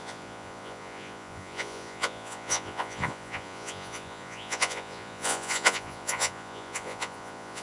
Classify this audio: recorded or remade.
remade